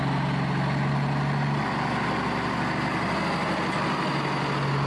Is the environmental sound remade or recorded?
recorded